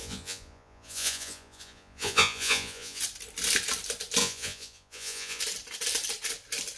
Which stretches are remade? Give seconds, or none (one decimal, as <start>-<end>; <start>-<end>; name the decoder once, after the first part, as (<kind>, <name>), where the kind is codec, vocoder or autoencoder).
0.0-3.0 (vocoder, Vocos); 4.2-5.4